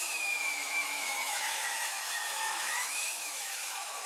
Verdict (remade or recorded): remade